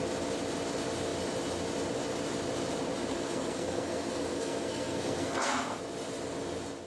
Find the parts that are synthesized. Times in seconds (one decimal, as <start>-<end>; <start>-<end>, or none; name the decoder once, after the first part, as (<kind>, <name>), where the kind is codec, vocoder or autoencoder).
3.1-5.8 (codec, SNAC)